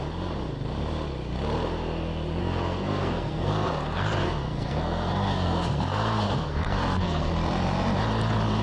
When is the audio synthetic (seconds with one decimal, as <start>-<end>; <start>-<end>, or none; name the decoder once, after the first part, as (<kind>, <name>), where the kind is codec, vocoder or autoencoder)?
2.4-7.3 (codec, SNAC)